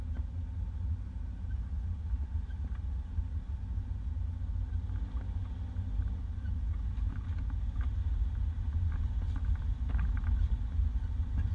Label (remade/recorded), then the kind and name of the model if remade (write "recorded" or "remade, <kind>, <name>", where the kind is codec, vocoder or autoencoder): recorded